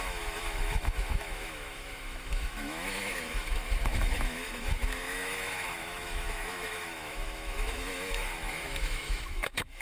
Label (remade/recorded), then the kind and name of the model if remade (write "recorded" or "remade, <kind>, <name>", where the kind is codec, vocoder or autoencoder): remade, autoencoder, DAC-VAE